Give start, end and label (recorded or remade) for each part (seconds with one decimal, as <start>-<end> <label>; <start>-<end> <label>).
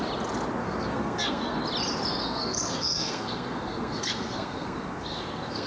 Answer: 0.0-0.6 recorded; 0.6-1.6 remade; 1.6-2.2 recorded; 2.2-5.7 remade